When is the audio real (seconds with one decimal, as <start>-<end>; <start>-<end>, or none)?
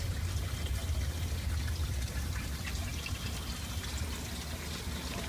0.0-5.3